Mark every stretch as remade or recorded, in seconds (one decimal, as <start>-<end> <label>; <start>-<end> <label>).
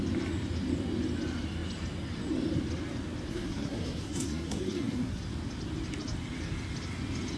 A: 0.0-3.3 recorded; 3.3-5.2 remade; 5.2-7.4 recorded